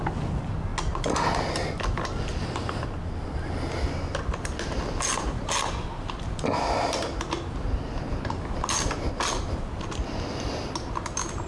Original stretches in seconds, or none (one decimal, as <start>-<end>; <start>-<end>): 0.0-11.5